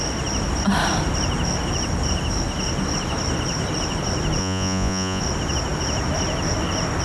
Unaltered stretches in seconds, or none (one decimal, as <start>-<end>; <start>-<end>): 0.0-4.4; 5.2-7.0